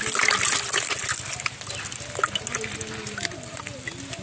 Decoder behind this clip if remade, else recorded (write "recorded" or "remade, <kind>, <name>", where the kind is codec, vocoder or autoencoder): recorded